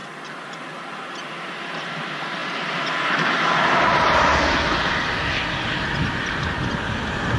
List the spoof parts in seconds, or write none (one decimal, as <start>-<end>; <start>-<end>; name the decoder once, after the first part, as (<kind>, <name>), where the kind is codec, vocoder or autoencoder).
none